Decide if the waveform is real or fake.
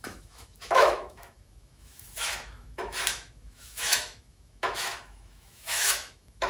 fake